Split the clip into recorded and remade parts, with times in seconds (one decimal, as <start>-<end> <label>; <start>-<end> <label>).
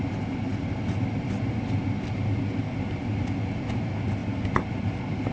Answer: 0.0-5.3 recorded